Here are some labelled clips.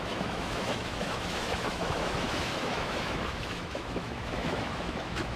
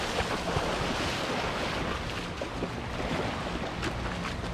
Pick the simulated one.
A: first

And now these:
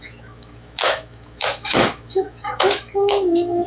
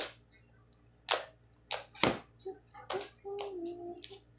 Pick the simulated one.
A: first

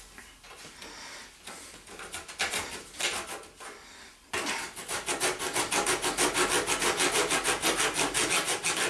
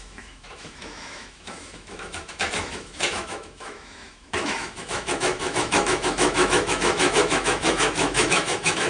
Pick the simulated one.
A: second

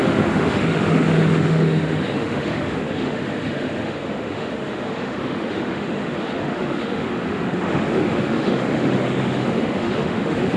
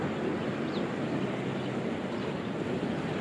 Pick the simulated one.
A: first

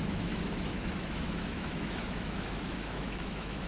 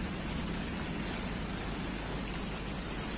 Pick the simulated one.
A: first